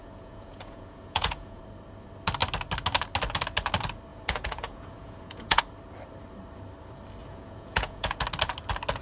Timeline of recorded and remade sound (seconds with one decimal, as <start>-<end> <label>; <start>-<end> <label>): 0.0-1.6 remade; 1.6-4.1 recorded; 4.1-5.6 remade; 5.6-7.2 recorded; 7.2-8.2 remade; 8.2-9.0 recorded